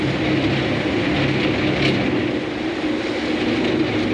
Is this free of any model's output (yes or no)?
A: yes